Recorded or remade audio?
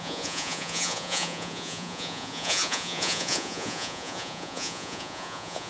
remade